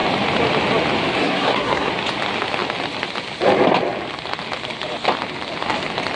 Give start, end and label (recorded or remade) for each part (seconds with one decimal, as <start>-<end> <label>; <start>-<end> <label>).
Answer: 0.0-1.2 recorded; 1.2-1.9 remade; 1.9-6.2 recorded